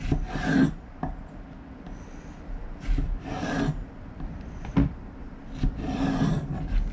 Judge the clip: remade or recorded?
recorded